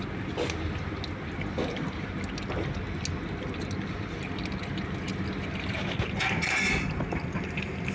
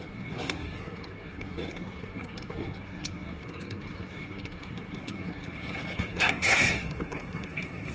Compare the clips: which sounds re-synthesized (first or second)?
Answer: second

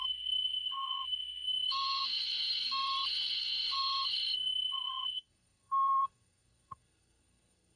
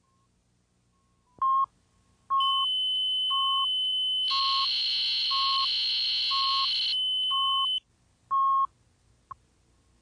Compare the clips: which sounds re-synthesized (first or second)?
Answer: first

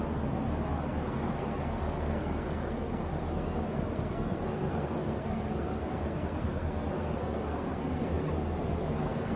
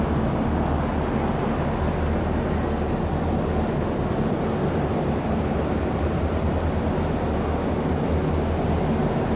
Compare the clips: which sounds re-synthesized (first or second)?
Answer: first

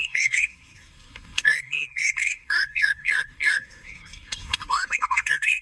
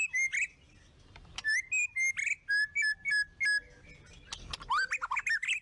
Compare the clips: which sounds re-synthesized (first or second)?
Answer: first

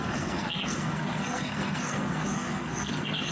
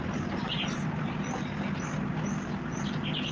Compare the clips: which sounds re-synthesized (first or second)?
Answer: first